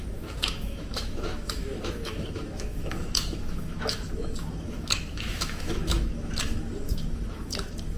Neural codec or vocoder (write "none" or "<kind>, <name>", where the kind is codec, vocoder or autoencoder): autoencoder, DAC-VAE